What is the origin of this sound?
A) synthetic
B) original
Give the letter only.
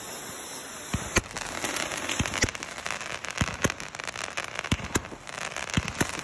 B